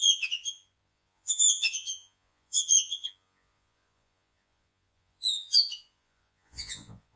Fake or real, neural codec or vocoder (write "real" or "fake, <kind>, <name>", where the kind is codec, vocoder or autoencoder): fake, vocoder, Vocos